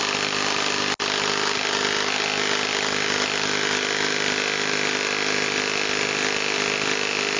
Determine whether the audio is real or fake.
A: real